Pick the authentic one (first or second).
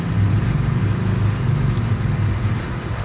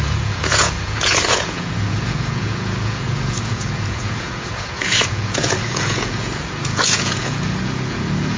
first